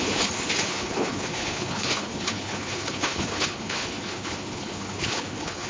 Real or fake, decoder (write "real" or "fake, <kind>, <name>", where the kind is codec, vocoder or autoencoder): fake, codec, HILCodec